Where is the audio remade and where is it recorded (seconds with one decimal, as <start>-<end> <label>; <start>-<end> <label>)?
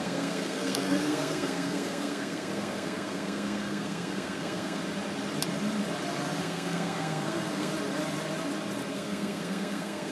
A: 0.0-4.8 remade; 4.8-6.4 recorded; 6.4-7.7 remade; 7.7-8.9 recorded; 8.9-10.1 remade